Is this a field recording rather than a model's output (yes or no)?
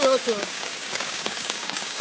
no